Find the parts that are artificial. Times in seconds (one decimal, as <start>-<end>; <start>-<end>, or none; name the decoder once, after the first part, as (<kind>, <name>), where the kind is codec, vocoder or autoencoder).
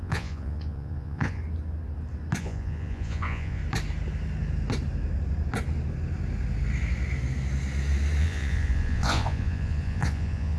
0.0-1.4 (vocoder, Vocos); 2.4-3.6; 8.2-10.6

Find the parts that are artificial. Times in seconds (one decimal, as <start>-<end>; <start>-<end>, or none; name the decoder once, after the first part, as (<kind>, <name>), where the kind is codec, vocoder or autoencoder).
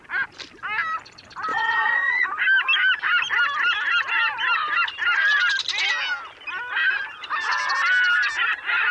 1.5-2.4 (vocoder, Vocos)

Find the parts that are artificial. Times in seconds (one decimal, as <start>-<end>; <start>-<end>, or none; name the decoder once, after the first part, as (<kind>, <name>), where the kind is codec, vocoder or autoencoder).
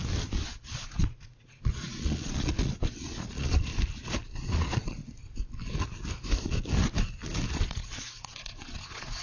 0.5-3.7 (vocoder, Vocos); 4.4-5.0; 7.5-9.2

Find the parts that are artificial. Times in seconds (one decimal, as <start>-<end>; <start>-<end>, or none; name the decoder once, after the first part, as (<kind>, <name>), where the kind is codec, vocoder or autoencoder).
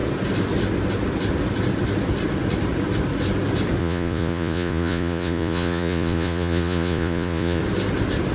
3.8-7.6 (vocoder, Vocos)